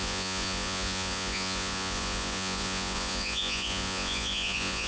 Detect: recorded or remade remade